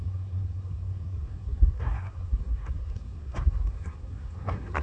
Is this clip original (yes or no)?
no